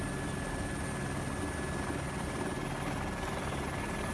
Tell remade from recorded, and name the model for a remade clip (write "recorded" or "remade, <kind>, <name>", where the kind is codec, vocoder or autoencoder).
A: recorded